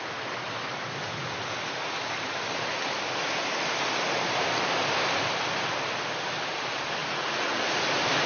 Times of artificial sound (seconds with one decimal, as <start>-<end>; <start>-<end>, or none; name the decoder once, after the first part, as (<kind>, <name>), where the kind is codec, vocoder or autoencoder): 7.0-7.8 (vocoder, Vocos)